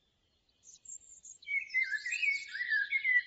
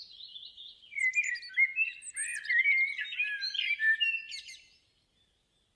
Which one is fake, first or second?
first